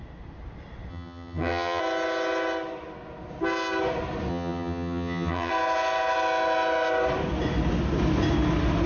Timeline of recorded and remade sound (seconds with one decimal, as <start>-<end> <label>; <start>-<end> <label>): 0.0-0.9 recorded; 0.9-1.8 remade; 1.8-4.3 recorded; 4.3-5.5 remade; 5.5-8.9 recorded